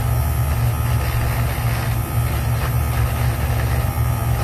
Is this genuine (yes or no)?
yes